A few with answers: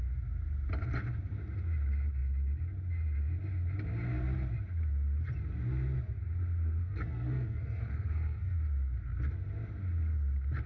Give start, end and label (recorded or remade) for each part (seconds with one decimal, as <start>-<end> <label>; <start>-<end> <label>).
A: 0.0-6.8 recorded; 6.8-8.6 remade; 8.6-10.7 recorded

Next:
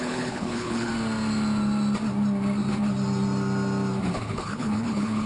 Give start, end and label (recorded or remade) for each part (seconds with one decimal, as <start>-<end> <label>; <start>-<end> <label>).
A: 0.0-0.9 remade; 0.9-4.1 recorded; 4.1-5.3 remade

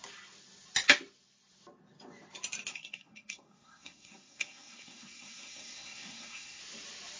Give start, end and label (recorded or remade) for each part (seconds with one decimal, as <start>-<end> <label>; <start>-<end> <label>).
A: 0.0-2.7 recorded; 2.7-6.6 remade; 6.6-7.2 recorded

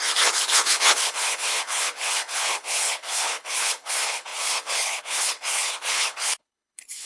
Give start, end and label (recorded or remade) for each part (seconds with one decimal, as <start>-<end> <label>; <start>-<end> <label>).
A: 0.0-7.1 remade

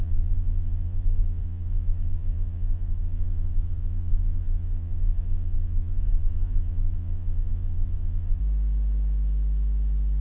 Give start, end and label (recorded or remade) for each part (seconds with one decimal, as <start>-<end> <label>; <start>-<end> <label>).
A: 0.0-8.4 remade; 8.4-10.2 recorded

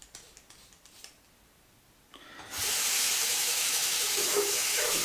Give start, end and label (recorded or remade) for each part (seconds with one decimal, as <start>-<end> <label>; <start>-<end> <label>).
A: 0.0-3.0 recorded; 3.0-5.0 remade

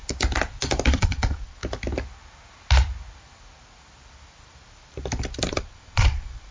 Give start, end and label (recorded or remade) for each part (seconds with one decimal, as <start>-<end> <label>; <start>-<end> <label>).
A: 0.0-0.9 recorded; 0.9-1.6 remade; 1.6-5.5 recorded; 5.5-6.5 remade

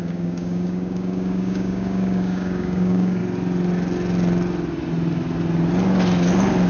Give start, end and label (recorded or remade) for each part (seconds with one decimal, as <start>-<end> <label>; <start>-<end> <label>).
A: 0.0-3.2 remade; 3.2-6.7 recorded